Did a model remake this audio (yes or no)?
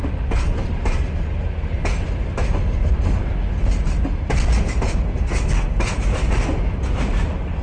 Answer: no